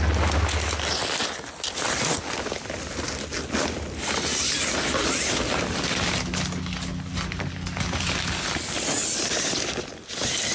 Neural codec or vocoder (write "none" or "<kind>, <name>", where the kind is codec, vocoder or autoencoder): none